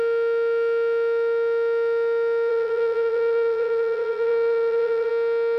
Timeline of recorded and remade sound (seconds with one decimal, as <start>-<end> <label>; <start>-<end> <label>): 0.0-2.5 recorded; 2.5-5.1 remade; 5.1-5.6 recorded